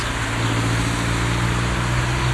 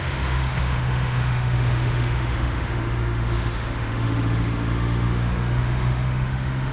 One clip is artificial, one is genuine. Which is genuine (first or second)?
first